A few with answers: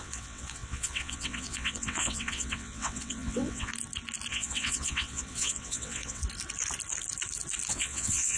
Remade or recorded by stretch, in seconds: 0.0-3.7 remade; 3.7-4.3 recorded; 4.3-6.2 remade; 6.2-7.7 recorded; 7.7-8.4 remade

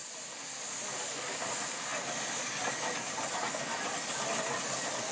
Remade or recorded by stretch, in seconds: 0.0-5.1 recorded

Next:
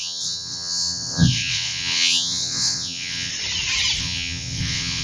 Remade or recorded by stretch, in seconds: 0.0-3.3 remade; 3.3-4.0 recorded; 4.0-5.0 remade

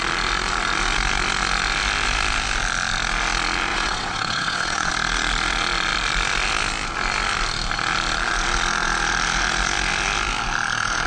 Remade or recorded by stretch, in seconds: 0.0-3.7 recorded; 3.7-4.9 remade; 4.9-11.1 recorded

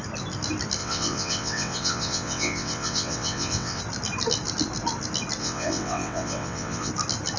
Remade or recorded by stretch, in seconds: 0.0-0.8 recorded; 0.8-3.8 remade; 3.8-5.4 recorded; 5.4-6.9 remade; 6.9-7.4 recorded

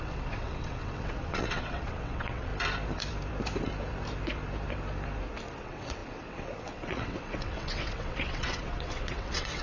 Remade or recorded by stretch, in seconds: 0.0-2.5 remade; 2.5-5.6 recorded; 5.6-9.6 remade

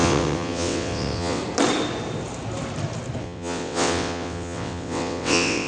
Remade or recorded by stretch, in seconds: 0.0-1.4 remade; 1.4-3.2 recorded; 3.2-5.7 remade